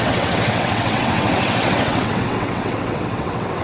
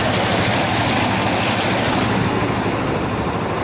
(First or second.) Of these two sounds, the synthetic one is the first